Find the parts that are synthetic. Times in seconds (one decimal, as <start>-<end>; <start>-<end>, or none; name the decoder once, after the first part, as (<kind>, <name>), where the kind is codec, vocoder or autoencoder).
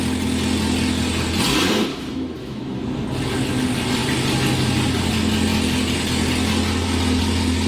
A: 1.9-2.8 (autoencoder, DAC-VAE)